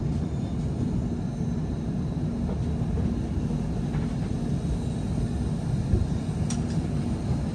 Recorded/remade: recorded